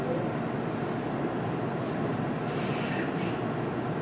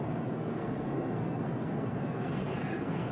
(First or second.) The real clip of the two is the first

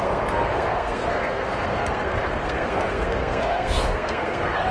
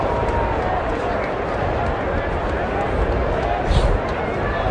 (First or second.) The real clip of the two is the second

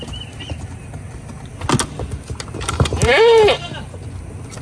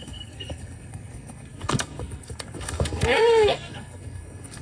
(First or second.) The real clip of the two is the first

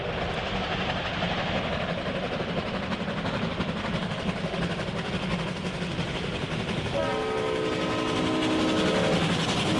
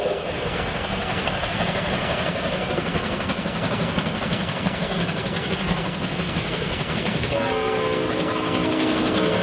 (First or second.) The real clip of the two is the first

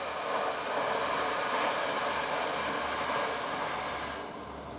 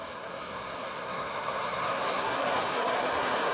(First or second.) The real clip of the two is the first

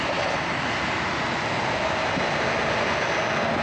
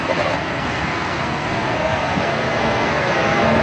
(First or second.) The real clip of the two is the first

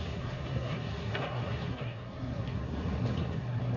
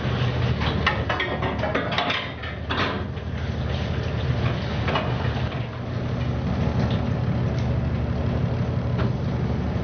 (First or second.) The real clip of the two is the second